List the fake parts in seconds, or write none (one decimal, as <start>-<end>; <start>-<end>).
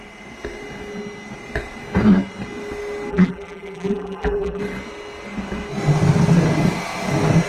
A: 3.1-4.6